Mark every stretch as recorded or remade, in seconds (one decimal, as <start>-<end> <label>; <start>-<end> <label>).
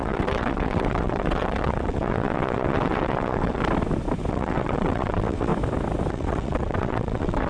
0.0-3.6 remade; 3.6-4.3 recorded; 4.3-5.5 remade; 5.5-6.1 recorded; 6.1-7.5 remade